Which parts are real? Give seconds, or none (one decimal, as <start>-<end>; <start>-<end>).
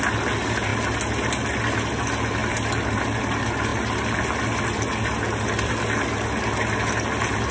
0.0-7.5